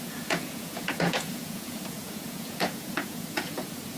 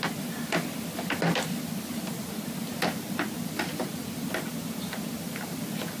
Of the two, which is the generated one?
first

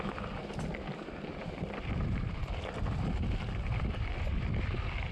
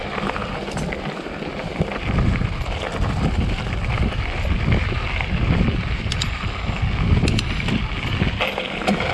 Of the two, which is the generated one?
first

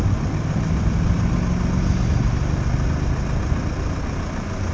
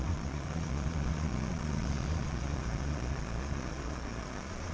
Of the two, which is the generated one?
second